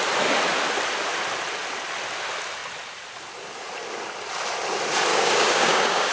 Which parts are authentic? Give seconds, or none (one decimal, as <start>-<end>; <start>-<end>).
0.0-5.1